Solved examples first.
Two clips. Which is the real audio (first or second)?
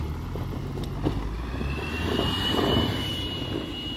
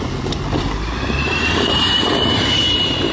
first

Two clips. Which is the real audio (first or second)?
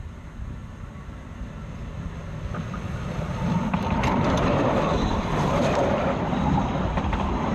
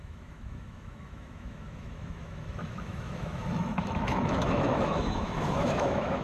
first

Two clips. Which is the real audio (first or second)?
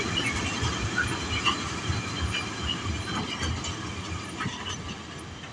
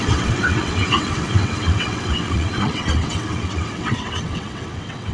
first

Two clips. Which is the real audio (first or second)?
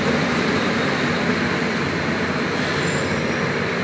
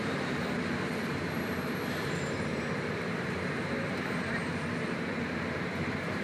first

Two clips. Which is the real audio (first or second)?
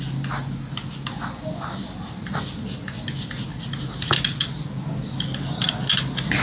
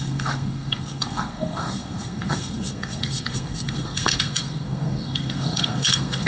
first